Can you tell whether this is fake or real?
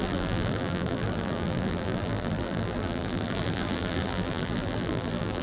fake